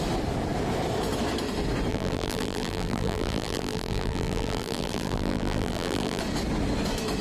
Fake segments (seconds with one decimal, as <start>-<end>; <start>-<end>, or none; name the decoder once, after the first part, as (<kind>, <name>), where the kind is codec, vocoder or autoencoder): 1.9-6.2 (vocoder, BigVGAN v2)